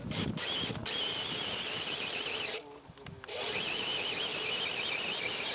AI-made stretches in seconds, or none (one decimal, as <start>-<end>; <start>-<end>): none